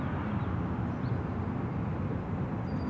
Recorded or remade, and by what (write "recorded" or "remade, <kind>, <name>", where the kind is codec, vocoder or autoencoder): recorded